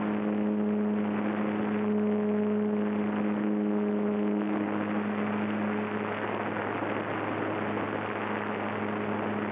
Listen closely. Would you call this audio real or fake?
real